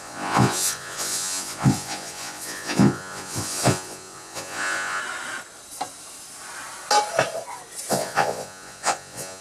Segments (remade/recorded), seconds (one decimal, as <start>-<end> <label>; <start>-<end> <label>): 0.0-5.0 remade; 5.0-7.9 recorded; 7.9-9.4 remade